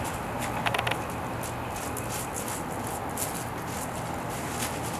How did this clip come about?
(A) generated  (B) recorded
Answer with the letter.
B